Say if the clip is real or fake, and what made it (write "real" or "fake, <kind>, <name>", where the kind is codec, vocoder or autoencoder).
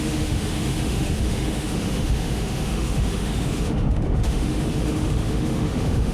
fake, autoencoder, DAC-VAE